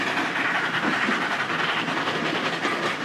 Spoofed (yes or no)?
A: no